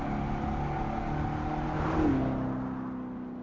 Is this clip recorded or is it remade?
recorded